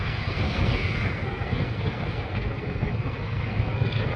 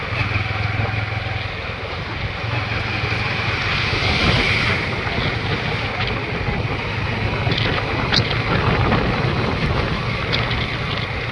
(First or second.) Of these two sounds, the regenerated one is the first